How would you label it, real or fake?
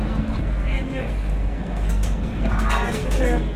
fake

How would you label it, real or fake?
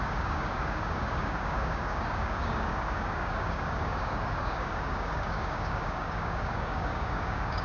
fake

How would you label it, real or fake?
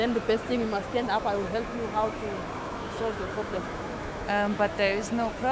fake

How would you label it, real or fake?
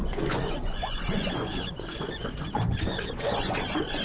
fake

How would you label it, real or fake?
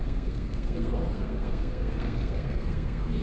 fake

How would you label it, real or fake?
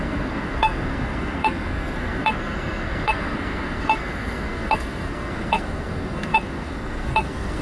fake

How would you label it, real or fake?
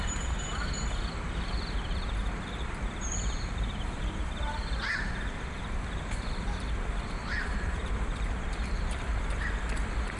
fake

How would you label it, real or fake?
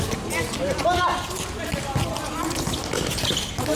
real